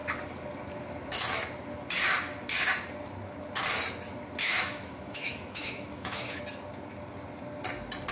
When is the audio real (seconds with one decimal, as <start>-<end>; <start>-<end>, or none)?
0.0-4.4; 6.4-8.1